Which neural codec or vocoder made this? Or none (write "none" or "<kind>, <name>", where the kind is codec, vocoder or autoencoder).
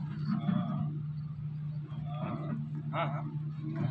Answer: none